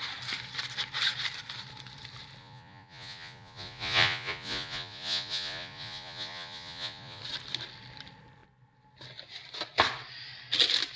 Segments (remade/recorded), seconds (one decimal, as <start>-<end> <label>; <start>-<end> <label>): 0.0-2.4 recorded; 2.4-7.2 remade; 7.2-11.0 recorded